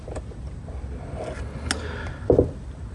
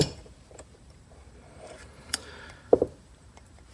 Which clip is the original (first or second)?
first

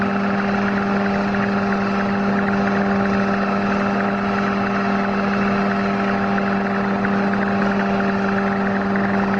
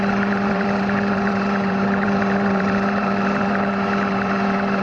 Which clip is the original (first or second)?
first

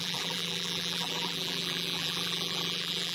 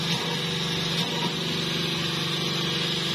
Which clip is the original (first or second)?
second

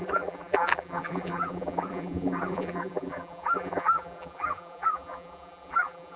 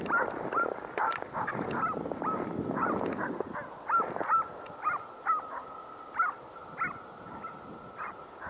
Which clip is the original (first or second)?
second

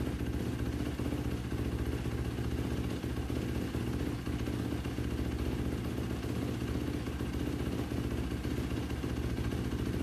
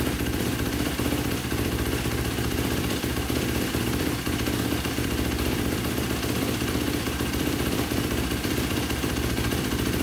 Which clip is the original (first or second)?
first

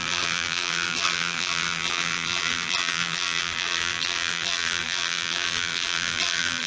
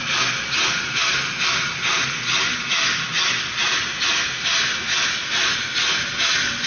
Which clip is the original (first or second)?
second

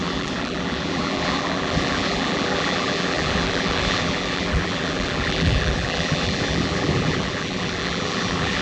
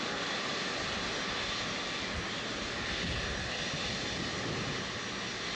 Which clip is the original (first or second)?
second